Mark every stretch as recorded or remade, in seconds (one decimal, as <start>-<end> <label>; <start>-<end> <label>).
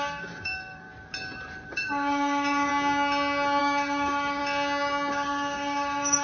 0.0-0.9 remade; 0.9-1.7 recorded; 1.7-2.7 remade; 2.7-3.6 recorded; 3.6-4.4 remade; 4.4-5.1 recorded; 5.1-6.2 remade